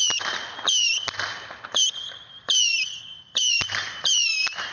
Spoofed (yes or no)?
no